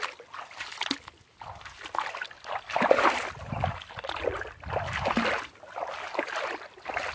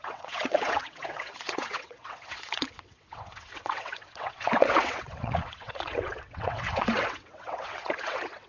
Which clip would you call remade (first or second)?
second